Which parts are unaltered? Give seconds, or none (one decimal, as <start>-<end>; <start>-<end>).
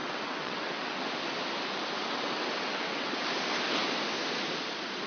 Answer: 1.1-2.0; 3.2-5.1